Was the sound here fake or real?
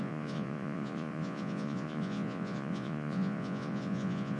fake